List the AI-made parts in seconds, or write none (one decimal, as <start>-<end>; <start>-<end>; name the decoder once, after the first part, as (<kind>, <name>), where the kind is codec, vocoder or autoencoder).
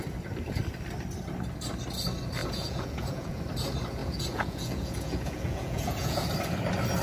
2.4-3.4 (vocoder, Vocos); 4.0-6.3